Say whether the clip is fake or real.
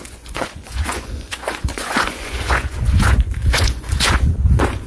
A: fake